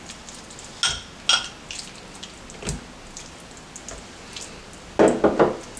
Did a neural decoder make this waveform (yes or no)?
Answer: no